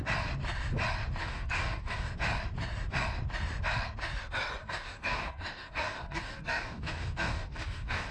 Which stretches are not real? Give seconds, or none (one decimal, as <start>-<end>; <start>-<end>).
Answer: 1.2-2.1; 4.6-8.1